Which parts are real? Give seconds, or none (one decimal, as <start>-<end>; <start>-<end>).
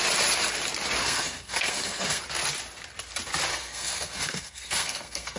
0.0-1.0; 2.2-3.5